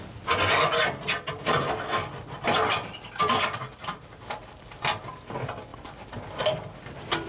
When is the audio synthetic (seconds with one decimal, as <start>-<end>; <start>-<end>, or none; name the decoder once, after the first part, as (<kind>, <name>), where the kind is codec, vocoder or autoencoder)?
2.0-5.0 (vocoder, BigVGAN v2); 5.7-6.4